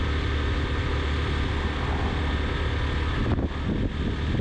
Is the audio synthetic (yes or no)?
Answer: no